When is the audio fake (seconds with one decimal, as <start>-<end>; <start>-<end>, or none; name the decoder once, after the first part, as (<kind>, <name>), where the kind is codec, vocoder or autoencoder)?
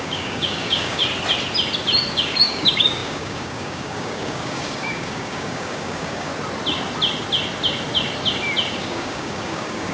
0.0-1.0 (codec, DAC); 2.1-6.3; 8.8-9.9